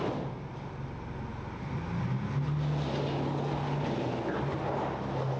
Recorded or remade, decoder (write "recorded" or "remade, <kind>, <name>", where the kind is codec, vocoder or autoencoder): recorded